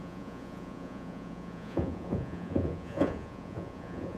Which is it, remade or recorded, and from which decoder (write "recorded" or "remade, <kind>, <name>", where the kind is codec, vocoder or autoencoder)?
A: remade, vocoder, Vocos